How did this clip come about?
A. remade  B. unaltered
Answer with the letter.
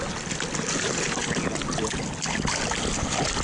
B